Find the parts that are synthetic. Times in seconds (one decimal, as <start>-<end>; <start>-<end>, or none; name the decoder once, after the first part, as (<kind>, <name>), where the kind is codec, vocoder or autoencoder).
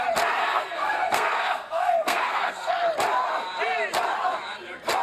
0.4-2.7 (codec, SNAC)